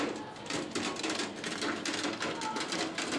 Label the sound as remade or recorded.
recorded